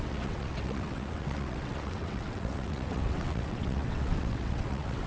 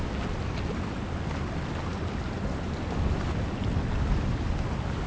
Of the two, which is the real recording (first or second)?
second